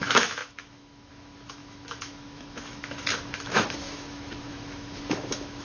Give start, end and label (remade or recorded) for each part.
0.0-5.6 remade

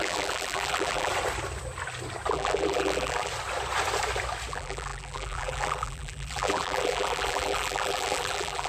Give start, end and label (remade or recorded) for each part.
0.0-1.1 remade; 1.1-2.3 recorded; 2.3-3.3 remade; 3.3-4.5 recorded; 4.5-8.7 remade

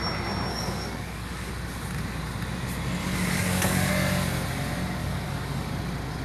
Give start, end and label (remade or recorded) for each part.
0.0-0.5 recorded; 0.5-1.5 remade; 1.5-3.0 recorded; 3.0-3.9 remade; 3.9-5.0 recorded; 5.0-5.7 remade; 5.7-6.2 recorded

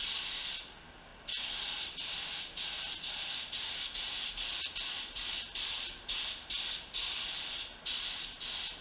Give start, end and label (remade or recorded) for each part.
0.0-8.8 recorded

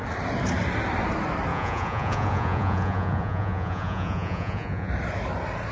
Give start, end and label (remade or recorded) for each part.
0.0-1.5 recorded; 1.5-4.9 remade; 4.9-5.7 recorded